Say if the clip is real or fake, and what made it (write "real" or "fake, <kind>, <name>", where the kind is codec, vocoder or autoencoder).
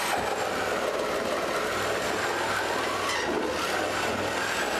real